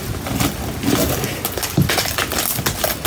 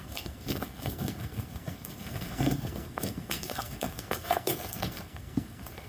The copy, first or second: second